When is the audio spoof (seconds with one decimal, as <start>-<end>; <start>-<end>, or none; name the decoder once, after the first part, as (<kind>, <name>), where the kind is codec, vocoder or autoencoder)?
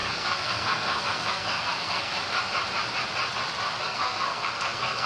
0.0-2.1 (codec, SNAC); 3.8-5.1